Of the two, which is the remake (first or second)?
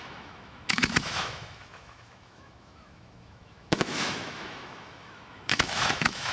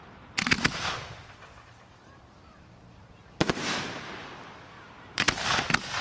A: first